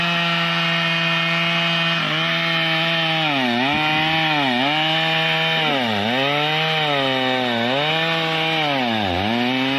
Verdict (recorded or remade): recorded